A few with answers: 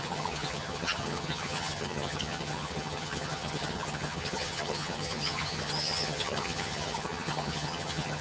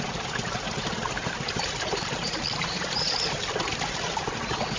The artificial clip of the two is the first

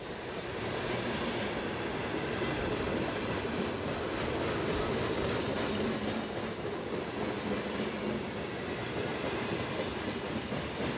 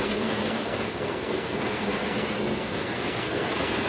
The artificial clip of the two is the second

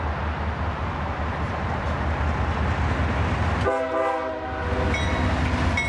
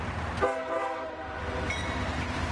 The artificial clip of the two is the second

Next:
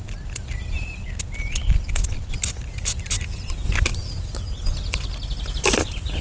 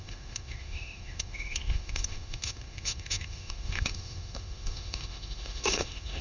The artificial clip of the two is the second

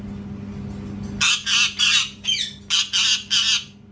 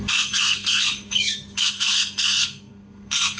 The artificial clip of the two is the second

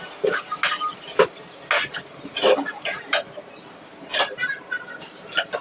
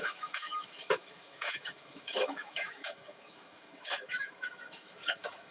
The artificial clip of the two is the second